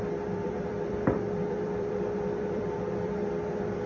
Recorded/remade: remade